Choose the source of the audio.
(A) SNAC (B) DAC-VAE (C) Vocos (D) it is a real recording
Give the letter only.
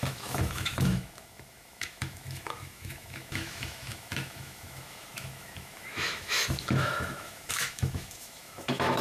B